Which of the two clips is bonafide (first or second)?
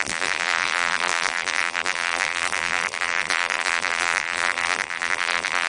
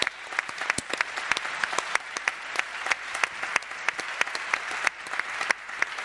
second